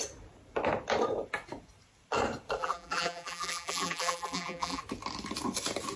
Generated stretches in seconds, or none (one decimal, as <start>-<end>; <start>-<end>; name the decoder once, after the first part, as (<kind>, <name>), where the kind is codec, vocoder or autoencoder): 2.6-4.8 (vocoder, BigVGAN v2)